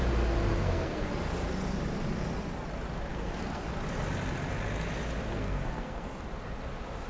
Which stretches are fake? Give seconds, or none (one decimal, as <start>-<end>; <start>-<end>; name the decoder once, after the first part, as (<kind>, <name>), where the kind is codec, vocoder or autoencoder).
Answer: 0.5-1.1 (codec, SNAC); 3.1-3.7; 5.3-6.2